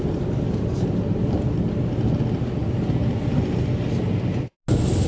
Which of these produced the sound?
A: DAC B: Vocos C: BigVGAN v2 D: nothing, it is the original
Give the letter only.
D